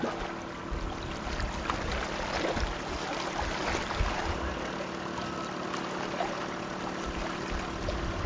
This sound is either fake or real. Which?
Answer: real